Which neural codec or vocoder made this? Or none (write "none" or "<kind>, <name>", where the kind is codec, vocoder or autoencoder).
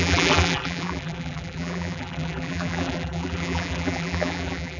vocoder, BigVGAN v2